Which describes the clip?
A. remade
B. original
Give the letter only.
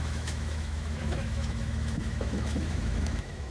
A